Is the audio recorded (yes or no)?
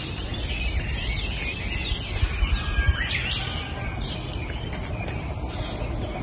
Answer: yes